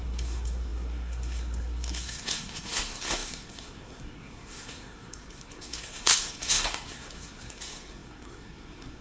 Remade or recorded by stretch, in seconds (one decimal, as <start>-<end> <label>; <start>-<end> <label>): 0.0-9.0 remade